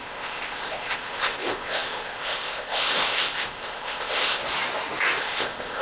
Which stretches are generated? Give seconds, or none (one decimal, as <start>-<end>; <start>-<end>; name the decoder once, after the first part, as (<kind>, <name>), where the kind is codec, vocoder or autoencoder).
0.0-4.4 (codec, ZipCodec); 5.2-5.8

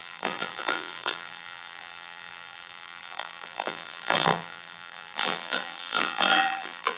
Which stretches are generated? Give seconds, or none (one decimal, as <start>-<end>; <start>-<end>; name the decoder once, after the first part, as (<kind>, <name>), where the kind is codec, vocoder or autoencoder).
0.0-7.0 (vocoder, BigVGAN v2)

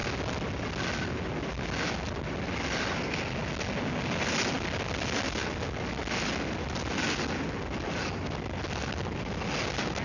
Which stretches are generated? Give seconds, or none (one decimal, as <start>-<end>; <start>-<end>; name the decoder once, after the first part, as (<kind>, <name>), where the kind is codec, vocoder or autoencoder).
none